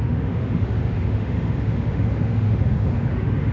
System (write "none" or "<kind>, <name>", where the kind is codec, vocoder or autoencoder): autoencoder, DAC-VAE